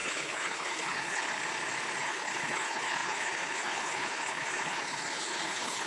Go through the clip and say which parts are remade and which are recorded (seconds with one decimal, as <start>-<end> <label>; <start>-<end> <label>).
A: 0.0-1.4 remade; 1.4-2.0 recorded; 2.0-5.9 remade